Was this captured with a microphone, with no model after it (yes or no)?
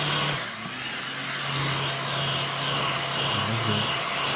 yes